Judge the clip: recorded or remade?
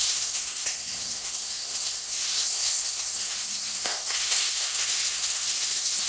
remade